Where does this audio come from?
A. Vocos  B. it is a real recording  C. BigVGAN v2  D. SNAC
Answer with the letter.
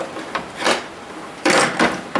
C